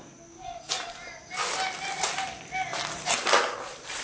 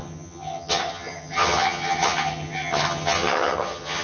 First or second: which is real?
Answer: first